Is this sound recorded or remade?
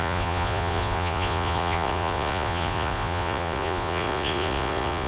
remade